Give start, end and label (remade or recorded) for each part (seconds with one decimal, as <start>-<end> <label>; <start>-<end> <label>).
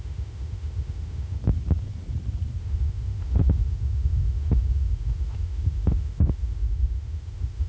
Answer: 0.0-1.4 remade; 1.4-2.6 recorded; 2.6-7.7 remade